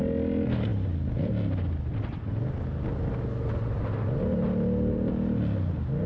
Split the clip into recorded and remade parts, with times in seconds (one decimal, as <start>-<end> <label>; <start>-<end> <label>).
0.0-6.1 recorded